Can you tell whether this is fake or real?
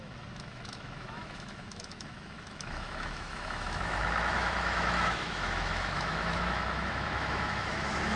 fake